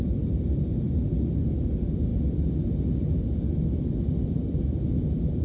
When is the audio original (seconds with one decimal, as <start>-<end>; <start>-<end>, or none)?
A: 0.0-5.4